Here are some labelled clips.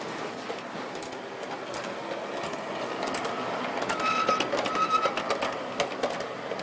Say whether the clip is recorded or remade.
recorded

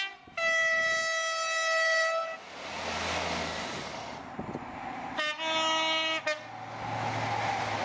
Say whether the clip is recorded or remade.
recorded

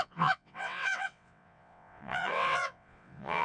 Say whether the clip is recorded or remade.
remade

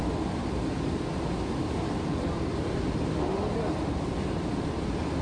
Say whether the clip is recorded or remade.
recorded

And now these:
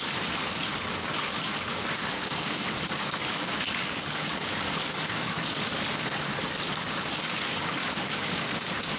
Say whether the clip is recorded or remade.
remade